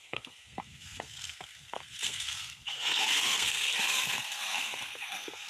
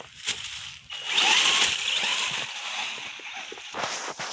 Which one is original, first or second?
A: second